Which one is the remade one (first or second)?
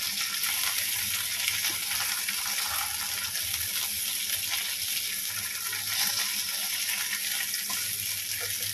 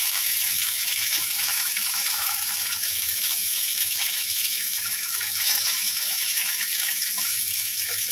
second